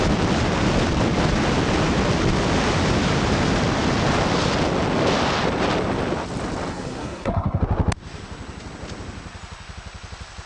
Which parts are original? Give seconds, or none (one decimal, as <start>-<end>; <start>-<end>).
0.0-6.7; 7.6-10.5